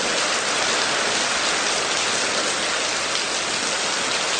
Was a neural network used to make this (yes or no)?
no